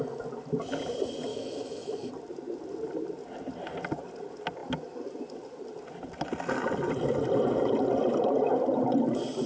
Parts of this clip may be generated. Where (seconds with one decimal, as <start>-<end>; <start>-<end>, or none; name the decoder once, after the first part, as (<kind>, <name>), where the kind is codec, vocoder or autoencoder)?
1.3-2.1 (autoencoder, DAC-VAE)